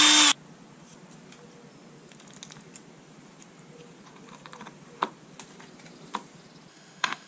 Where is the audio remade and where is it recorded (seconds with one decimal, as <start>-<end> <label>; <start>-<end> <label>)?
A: 0.0-6.7 recorded; 6.7-7.3 remade